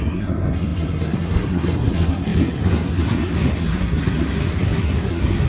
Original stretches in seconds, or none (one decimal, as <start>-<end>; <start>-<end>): none